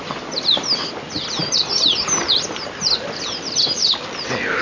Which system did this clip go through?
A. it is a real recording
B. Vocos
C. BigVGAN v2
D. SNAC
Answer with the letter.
A